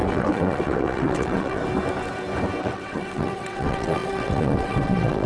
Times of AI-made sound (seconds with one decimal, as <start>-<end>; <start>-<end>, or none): 0.0-1.6; 2.6-5.3